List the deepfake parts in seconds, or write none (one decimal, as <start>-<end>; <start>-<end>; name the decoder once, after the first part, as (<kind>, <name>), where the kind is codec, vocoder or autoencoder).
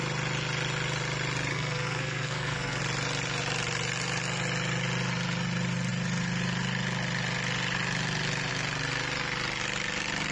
1.5-2.8 (codec, SNAC)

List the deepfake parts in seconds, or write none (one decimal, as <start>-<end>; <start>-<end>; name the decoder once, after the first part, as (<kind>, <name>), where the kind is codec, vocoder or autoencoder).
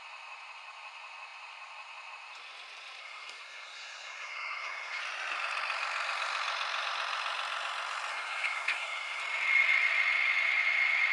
3.0-5.0 (codec, SNAC); 8.1-9.2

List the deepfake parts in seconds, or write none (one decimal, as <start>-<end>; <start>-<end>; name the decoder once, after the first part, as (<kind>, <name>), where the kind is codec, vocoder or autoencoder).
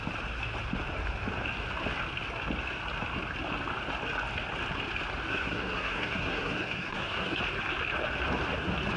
5.3-7.4 (codec, SNAC)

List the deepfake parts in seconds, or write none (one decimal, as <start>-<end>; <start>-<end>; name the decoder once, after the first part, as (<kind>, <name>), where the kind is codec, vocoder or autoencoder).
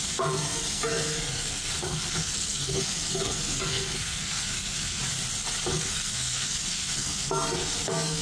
0.0-5.0 (codec, SNAC); 5.7-8.2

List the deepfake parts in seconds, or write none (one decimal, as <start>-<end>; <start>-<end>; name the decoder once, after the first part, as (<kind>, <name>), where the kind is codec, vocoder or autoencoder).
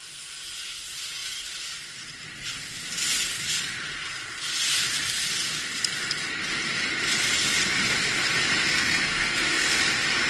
8.7-9.8 (codec, SNAC)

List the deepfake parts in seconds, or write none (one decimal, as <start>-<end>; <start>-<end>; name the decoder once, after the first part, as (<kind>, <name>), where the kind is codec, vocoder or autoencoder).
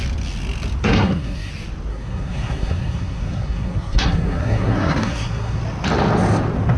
0.8-1.5 (codec, SNAC); 1.9-5.6